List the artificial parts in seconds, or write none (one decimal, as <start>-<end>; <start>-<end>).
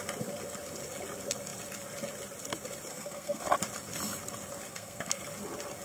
2.9-3.4; 4.7-5.2